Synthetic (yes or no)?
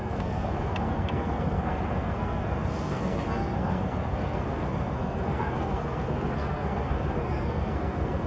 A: yes